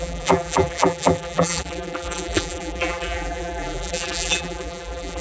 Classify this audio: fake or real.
fake